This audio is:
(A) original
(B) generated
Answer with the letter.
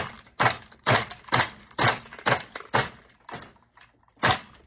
A